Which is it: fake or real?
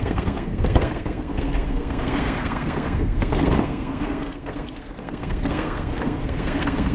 fake